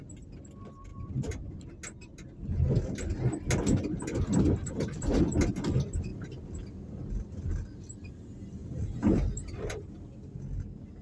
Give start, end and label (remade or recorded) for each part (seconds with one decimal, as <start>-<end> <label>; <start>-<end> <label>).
0.0-0.9 recorded; 0.9-1.5 remade; 1.5-6.1 recorded; 6.1-7.5 remade; 7.5-8.6 recorded; 8.6-10.4 remade; 10.4-11.0 recorded